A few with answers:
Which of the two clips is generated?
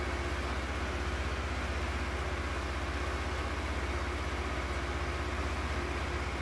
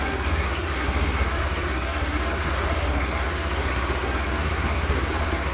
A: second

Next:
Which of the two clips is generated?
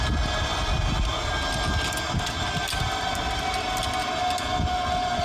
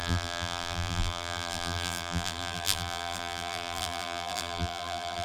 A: second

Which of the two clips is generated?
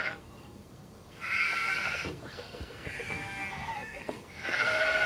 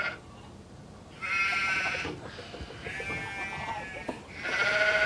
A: first